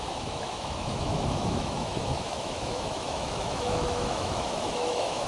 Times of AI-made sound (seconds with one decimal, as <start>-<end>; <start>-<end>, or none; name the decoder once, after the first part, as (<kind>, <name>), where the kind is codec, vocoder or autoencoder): 0.0-5.3 (autoencoder, DAC-VAE)